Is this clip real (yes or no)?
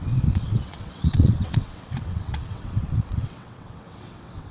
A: no